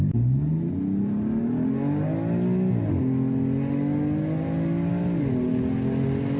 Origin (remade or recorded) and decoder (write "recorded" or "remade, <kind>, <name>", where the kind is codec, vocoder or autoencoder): recorded